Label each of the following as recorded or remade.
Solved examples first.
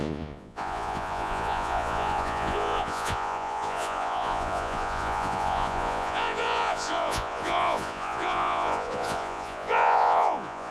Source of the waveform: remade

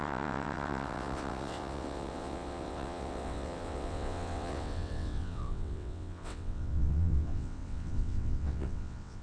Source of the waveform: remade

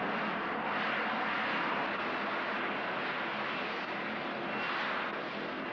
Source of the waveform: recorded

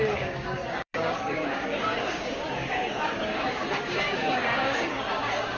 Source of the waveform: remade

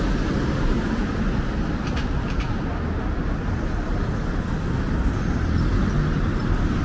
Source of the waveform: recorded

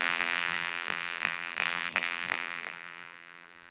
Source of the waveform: remade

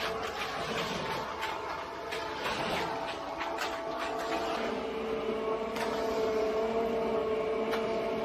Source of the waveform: recorded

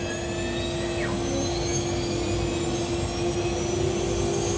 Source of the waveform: recorded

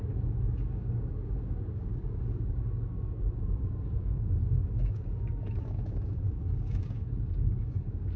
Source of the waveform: remade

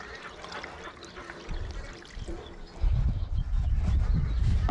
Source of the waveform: recorded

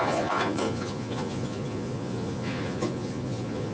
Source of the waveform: remade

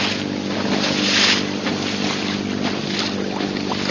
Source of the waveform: recorded